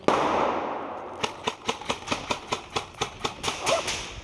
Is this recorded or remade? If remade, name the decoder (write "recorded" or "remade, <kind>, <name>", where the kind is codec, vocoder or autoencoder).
recorded